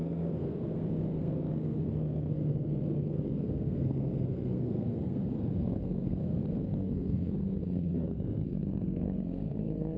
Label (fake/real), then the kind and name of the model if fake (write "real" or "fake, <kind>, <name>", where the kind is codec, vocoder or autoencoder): fake, codec, SNAC